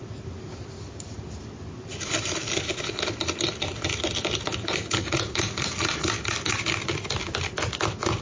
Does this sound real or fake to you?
real